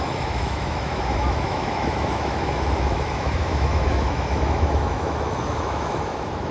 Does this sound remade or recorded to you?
remade